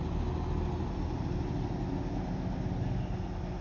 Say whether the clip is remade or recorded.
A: recorded